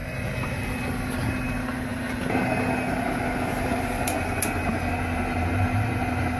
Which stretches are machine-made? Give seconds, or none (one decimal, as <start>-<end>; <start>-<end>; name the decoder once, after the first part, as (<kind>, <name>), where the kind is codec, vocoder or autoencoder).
0.9-1.9 (vocoder, BigVGAN v2); 3.5-4.7; 5.5-6.4